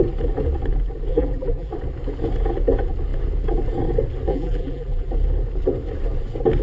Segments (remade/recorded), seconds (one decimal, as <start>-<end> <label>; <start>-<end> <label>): 0.0-1.1 recorded; 1.1-1.7 remade; 1.7-4.3 recorded; 4.3-5.1 remade; 5.1-6.6 recorded